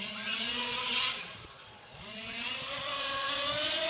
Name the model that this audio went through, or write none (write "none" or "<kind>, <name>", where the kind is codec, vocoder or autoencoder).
vocoder, Vocos